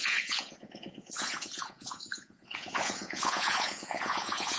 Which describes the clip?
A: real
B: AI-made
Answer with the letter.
B